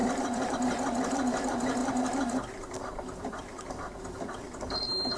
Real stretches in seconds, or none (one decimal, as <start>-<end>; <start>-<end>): 0.5-1.8; 4.6-5.2